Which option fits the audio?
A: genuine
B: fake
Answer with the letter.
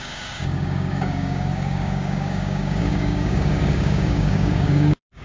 B